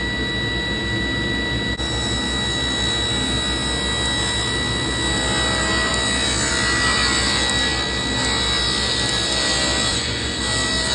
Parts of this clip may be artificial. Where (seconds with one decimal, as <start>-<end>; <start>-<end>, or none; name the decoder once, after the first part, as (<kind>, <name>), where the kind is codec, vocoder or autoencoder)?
9.9-10.4 (vocoder, Vocos)